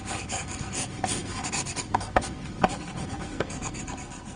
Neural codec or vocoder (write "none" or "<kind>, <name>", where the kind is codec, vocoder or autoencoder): codec, SNAC